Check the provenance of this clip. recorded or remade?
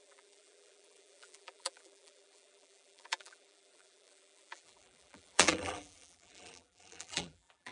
remade